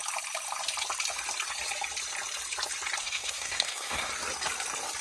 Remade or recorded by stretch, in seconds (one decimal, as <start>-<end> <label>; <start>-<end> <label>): 0.0-3.0 recorded; 3.0-4.1 remade; 4.1-5.0 recorded

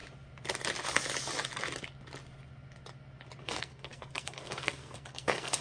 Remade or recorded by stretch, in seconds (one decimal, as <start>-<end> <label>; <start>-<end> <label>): 0.0-3.4 recorded; 3.4-5.6 remade

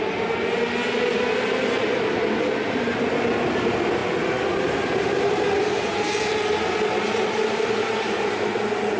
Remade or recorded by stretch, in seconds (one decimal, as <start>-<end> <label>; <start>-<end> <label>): 0.0-9.0 recorded

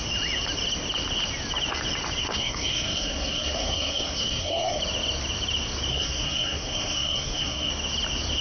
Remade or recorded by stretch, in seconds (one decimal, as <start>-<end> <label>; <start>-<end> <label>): 0.0-2.2 recorded; 2.2-4.8 remade; 4.8-5.9 recorded; 5.9-7.7 remade; 7.7-8.4 recorded

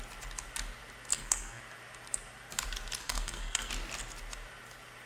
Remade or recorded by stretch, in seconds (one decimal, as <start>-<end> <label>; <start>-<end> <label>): 0.0-1.1 recorded; 1.1-1.6 remade; 1.6-3.0 recorded; 3.0-3.7 remade; 3.7-5.1 recorded